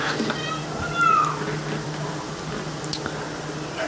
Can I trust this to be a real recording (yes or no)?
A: yes